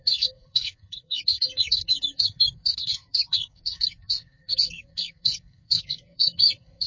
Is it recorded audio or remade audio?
remade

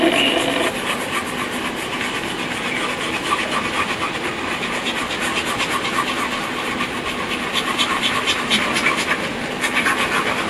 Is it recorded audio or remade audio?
recorded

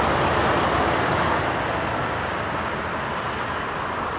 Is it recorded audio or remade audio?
recorded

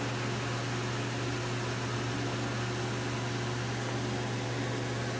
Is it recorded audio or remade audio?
recorded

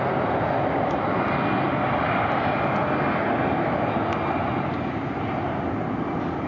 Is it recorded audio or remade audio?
recorded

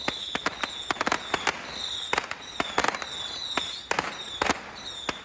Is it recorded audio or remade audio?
recorded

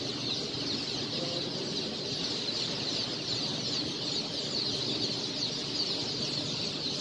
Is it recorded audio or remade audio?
recorded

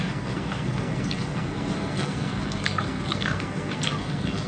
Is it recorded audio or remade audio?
remade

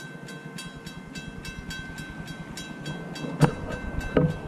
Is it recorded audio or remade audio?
recorded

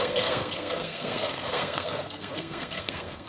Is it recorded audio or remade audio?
remade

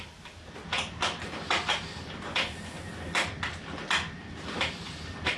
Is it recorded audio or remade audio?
recorded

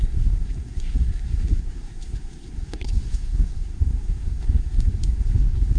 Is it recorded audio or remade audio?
remade